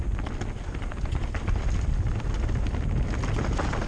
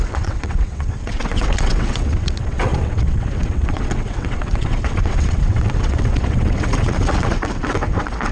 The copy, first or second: second